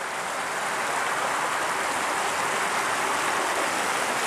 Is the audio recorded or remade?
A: recorded